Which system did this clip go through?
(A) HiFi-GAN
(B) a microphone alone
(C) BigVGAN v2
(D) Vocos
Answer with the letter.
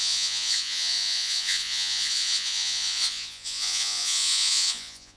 D